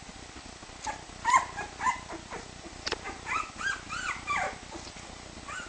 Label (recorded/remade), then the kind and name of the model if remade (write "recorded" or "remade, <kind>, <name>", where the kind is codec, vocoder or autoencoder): recorded